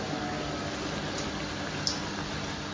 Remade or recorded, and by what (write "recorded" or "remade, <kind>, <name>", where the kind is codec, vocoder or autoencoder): recorded